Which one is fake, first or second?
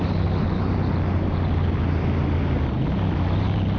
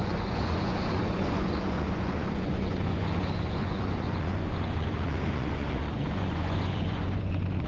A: second